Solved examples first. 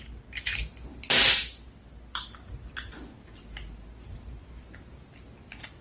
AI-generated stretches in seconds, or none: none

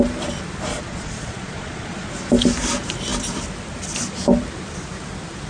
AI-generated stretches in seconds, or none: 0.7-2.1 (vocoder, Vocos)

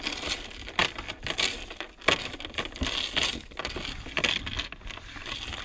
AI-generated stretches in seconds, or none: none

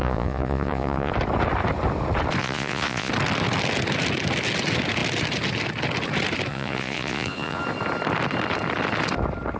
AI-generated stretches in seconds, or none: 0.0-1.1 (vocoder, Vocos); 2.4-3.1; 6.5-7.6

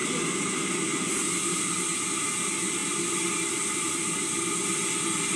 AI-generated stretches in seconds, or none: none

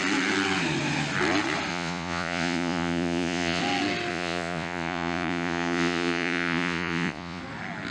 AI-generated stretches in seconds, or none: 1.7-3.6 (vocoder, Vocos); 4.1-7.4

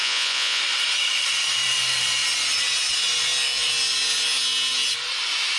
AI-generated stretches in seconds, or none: 0.0-0.6 (vocoder, Vocos)

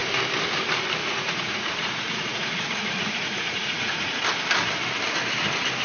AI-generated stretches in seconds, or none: 1.0-4.2 (vocoder, Vocos)